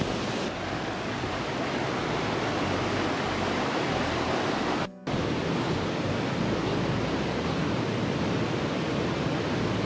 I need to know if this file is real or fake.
real